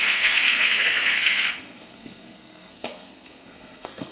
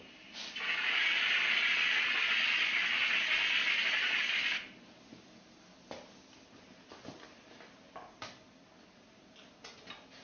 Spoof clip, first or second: first